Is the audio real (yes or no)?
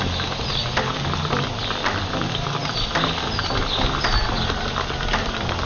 no